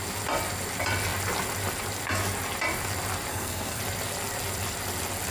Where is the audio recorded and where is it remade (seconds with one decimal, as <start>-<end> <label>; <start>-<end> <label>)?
0.0-3.3 recorded; 3.3-3.8 remade; 3.8-5.3 recorded